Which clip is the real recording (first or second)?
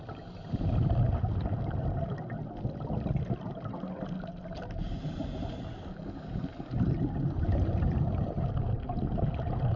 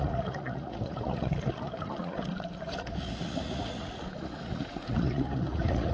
first